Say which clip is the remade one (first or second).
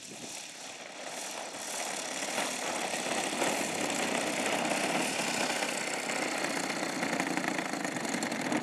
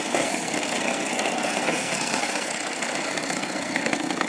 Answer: second